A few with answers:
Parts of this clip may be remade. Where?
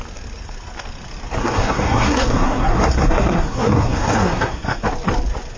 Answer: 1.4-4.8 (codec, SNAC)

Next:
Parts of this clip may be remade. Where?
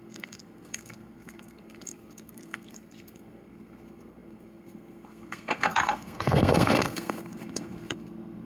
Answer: 0.0-8.4 (codec, SNAC)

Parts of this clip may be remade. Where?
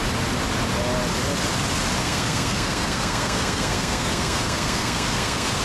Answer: 2.0-5.6 (codec, SNAC)